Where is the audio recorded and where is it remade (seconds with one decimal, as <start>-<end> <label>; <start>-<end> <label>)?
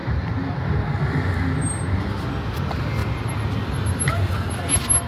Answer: 0.0-5.1 recorded